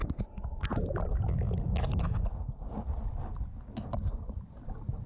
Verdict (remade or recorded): recorded